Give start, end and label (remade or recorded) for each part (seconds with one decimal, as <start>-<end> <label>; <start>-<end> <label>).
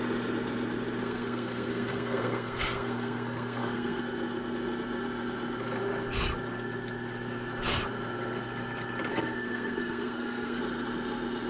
0.0-1.0 recorded; 1.0-4.0 remade; 4.0-9.1 recorded; 9.1-10.6 remade; 10.6-11.5 recorded